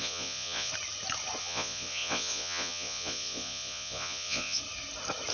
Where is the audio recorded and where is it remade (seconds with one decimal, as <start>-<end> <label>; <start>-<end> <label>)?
0.0-0.7 remade; 0.7-1.4 recorded; 1.4-4.6 remade; 4.6-5.3 recorded